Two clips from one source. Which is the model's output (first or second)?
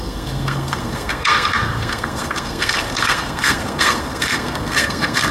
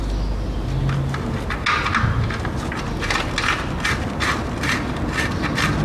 first